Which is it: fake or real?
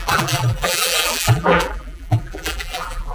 fake